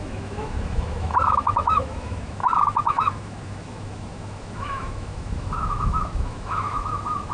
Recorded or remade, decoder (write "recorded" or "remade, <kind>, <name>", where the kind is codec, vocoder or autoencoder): remade, autoencoder, DAC-VAE